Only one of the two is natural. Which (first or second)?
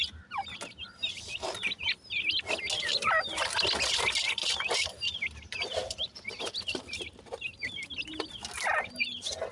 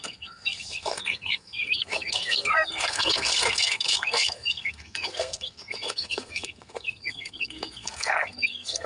first